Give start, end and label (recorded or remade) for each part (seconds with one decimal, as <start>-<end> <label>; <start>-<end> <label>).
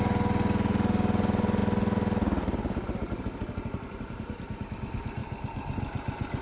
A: 0.0-6.4 recorded